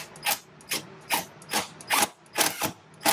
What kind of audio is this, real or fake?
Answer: real